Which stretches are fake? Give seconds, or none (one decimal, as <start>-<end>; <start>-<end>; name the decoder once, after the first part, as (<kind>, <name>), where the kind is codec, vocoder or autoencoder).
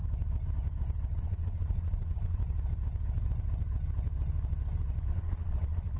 1.2-2.4 (vocoder, Vocos); 5.1-6.0